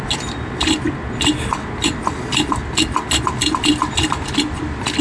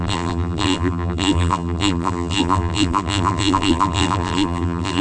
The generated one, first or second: second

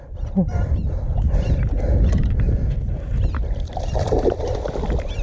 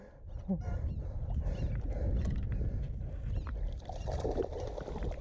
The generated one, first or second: first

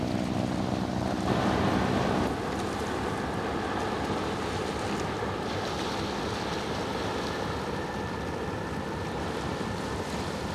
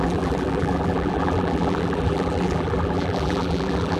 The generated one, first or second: second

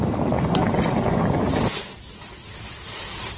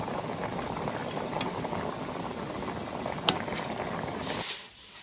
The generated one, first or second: first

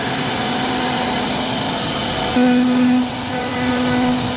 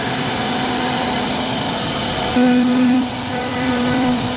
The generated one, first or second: second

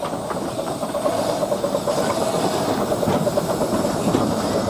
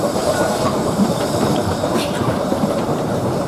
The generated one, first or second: second